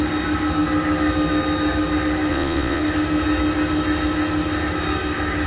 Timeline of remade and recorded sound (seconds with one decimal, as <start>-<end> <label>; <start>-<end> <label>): 0.0-2.3 recorded; 2.3-2.8 remade; 2.8-5.5 recorded